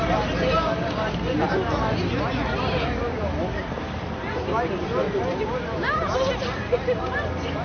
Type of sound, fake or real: real